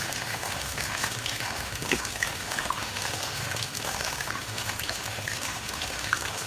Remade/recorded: remade